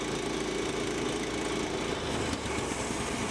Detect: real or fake real